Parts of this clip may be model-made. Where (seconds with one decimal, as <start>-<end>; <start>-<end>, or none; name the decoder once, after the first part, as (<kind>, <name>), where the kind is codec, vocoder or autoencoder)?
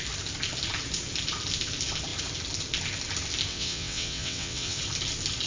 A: 3.5-4.8 (vocoder, WaveNeXt)